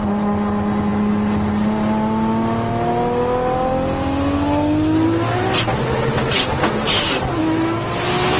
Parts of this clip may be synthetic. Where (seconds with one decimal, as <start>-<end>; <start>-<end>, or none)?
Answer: none